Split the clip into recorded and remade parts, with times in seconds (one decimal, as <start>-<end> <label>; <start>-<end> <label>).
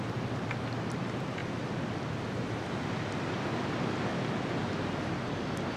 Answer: 0.0-5.8 recorded